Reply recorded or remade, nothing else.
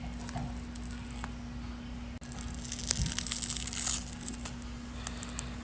recorded